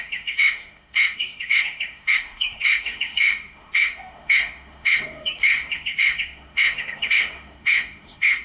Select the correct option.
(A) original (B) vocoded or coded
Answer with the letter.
B